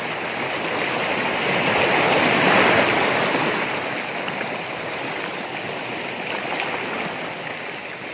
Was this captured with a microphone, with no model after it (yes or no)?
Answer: yes